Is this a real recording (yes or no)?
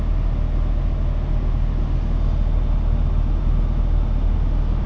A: yes